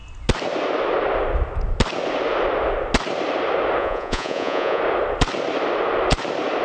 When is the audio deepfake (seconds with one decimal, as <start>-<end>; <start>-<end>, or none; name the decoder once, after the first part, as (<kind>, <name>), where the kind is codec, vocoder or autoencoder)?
3.8-4.8 (vocoder, Vocos)